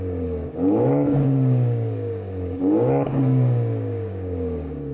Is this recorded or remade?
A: remade